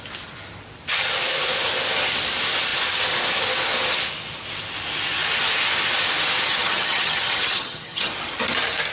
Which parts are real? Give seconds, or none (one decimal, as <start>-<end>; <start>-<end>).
0.0-6.5; 8.1-8.9